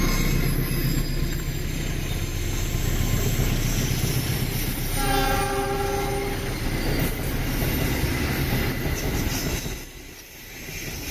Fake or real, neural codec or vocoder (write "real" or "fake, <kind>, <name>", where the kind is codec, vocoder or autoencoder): real